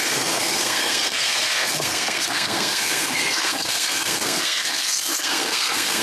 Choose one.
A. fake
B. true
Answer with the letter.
A